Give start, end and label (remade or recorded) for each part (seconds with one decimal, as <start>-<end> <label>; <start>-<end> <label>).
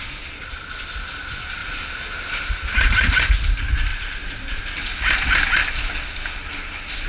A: 0.0-1.6 recorded; 1.6-2.5 remade; 2.5-3.9 recorded; 3.9-4.6 remade; 4.6-7.1 recorded